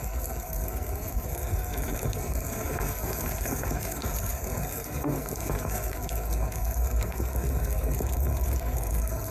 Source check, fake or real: fake